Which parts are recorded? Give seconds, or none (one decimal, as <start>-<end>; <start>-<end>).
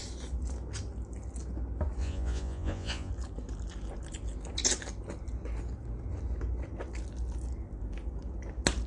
0.0-2.0; 3.1-8.9